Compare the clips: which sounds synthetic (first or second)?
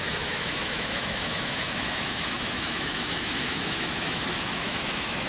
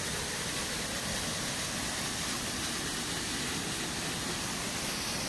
first